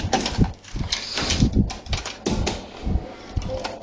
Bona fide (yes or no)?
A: yes